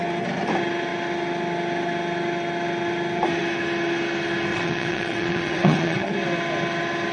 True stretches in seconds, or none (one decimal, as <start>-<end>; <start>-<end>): 0.0-4.5; 6.1-7.1